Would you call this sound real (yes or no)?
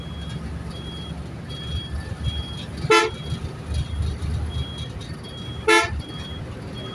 yes